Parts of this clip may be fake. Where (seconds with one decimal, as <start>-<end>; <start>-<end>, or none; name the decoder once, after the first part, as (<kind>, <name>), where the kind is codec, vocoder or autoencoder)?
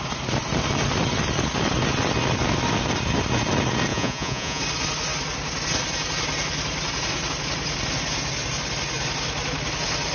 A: 3.9-4.6 (vocoder, Vocos)